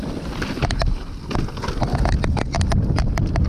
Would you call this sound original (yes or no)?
yes